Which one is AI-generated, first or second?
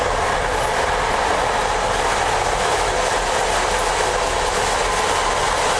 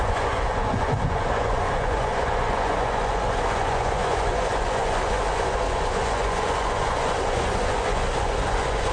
second